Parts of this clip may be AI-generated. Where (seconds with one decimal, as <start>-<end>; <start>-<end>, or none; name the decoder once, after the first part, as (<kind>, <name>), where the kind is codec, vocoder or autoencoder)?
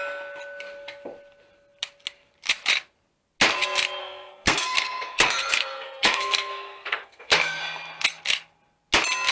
4.0-7.6 (codec, SNAC)